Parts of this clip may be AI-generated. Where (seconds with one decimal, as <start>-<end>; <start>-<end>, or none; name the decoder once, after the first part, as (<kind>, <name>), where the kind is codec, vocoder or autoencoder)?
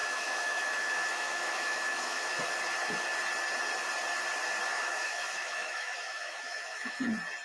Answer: 0.0-2.4 (autoencoder, DAC-VAE); 4.7-7.0